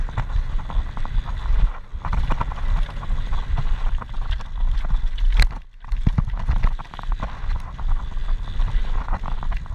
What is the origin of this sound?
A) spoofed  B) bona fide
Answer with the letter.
B